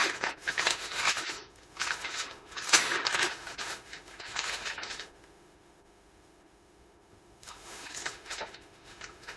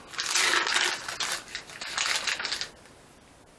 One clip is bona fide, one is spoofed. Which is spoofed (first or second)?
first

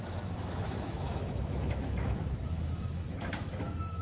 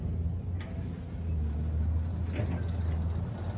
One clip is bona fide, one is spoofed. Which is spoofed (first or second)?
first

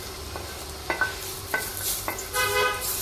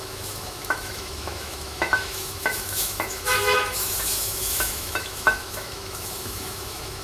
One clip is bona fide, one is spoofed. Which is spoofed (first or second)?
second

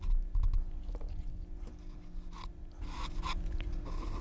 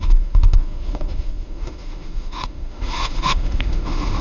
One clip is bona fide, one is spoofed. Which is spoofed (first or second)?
second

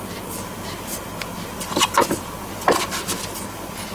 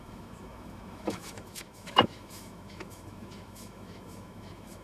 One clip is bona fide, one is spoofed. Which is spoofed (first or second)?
second